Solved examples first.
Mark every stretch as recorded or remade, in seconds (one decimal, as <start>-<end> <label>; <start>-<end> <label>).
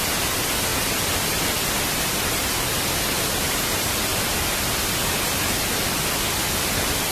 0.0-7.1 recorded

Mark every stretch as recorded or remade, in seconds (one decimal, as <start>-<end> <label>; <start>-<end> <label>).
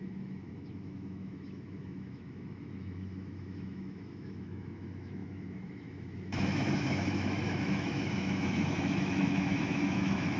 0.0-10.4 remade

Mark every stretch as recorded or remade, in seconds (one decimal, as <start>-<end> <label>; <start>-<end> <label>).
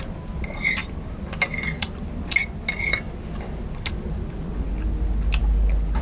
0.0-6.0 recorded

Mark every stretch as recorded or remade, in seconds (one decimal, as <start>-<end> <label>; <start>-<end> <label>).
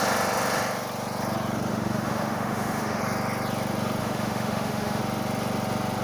0.0-1.7 recorded; 1.7-3.0 remade; 3.0-4.0 recorded; 4.0-5.0 remade; 5.0-6.0 recorded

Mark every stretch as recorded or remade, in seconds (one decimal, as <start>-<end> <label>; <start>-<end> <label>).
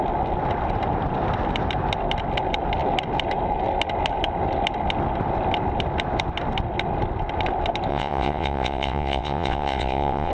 0.0-7.9 recorded; 7.9-10.3 remade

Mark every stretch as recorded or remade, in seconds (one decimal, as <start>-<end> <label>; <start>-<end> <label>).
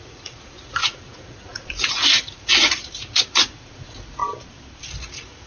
0.0-4.2 remade; 4.2-4.9 recorded; 4.9-5.5 remade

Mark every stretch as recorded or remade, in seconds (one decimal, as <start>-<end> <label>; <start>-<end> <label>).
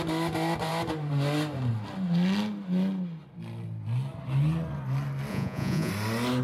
0.0-5.3 recorded; 5.3-5.9 remade; 5.9-6.4 recorded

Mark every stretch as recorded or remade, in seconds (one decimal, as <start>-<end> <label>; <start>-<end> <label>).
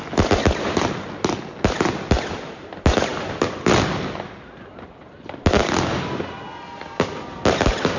0.0-8.0 recorded